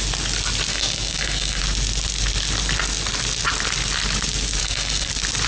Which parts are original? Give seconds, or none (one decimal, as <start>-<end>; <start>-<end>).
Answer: 0.0-0.7; 1.6-4.6; 5.1-5.5